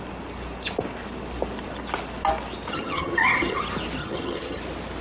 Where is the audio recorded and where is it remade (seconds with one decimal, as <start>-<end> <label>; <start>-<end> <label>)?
0.0-2.7 recorded; 2.7-3.6 remade; 3.6-4.0 recorded; 4.0-4.6 remade; 4.6-5.0 recorded